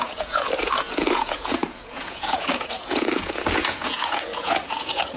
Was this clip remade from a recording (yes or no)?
yes